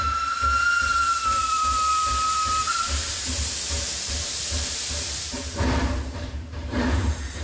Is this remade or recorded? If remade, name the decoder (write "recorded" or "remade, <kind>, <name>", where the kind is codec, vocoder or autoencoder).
remade, vocoder, BigVGAN v2